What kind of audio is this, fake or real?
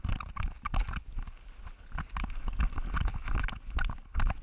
real